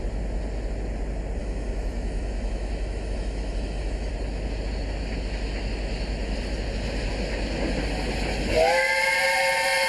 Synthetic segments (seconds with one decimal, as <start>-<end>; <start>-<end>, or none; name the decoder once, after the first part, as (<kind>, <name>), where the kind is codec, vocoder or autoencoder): 1.4-4.1 (autoencoder, DAC-VAE)